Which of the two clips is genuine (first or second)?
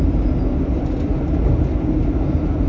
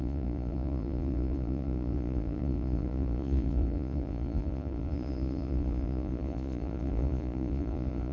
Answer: first